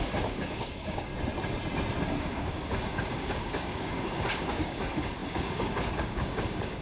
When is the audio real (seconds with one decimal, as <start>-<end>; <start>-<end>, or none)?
1.1-2.2